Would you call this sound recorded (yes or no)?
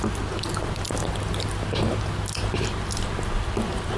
yes